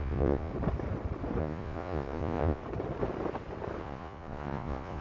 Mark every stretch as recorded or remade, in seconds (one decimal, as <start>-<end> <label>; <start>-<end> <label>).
0.0-0.5 remade; 0.5-1.4 recorded; 1.4-2.6 remade; 2.6-3.8 recorded; 3.8-5.0 remade